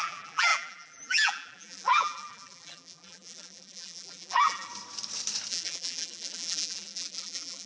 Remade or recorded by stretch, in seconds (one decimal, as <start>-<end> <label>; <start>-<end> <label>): 0.0-4.7 remade; 4.7-5.5 recorded; 5.5-7.7 remade